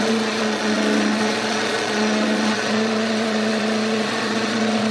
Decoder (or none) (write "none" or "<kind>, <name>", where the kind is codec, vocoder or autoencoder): vocoder, Vocos